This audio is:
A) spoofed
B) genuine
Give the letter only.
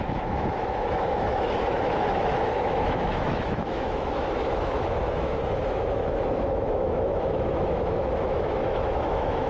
A